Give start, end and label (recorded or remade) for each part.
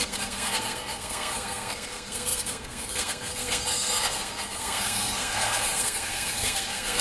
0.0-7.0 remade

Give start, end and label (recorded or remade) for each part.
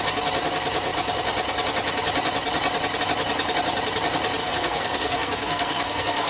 0.0-4.4 recorded; 4.4-6.3 remade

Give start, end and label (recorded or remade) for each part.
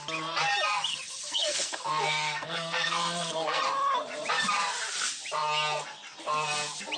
0.0-0.9 recorded; 0.9-3.6 remade; 3.6-7.0 recorded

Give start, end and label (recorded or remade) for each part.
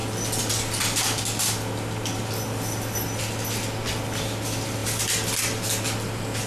0.0-6.5 recorded